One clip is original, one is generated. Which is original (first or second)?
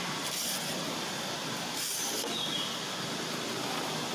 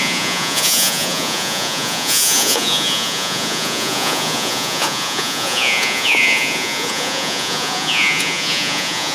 first